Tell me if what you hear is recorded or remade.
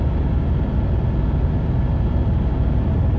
recorded